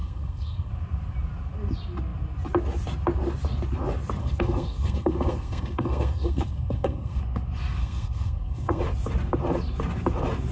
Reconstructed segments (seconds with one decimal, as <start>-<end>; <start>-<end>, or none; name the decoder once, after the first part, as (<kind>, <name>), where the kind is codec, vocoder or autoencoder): 0.0-0.7 (codec, SNAC); 4.2-7.2; 7.8-8.8